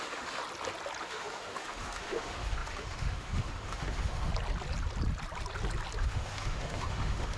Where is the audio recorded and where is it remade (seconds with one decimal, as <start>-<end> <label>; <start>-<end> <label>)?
0.0-0.4 remade; 0.4-1.0 recorded; 1.0-4.3 remade; 4.3-6.0 recorded; 6.0-7.4 remade